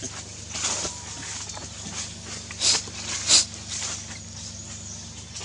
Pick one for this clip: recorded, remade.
recorded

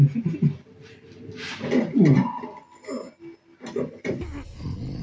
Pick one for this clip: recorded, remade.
recorded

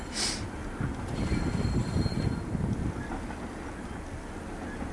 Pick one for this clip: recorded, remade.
recorded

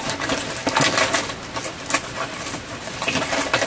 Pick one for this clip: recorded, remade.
recorded